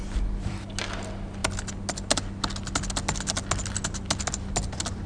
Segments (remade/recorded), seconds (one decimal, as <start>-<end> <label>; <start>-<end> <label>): 0.0-5.1 recorded